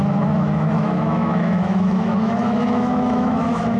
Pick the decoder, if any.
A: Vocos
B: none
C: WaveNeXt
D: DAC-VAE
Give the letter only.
D